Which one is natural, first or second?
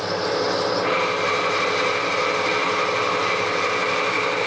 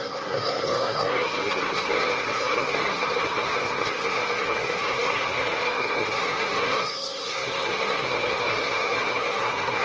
first